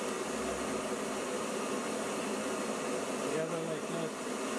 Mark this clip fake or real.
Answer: real